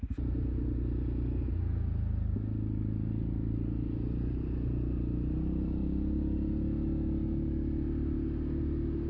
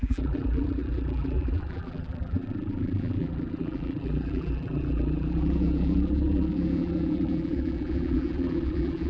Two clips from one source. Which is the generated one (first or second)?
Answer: second